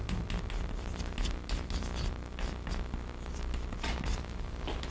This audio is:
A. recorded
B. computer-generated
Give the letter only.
A